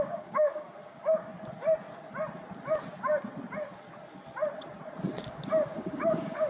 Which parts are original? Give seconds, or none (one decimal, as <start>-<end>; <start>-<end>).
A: 1.3-5.2